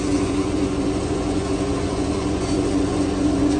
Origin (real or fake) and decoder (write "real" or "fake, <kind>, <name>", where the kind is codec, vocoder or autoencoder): fake, vocoder, Vocos